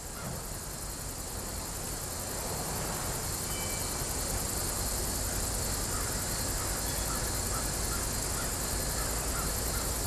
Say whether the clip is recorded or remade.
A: recorded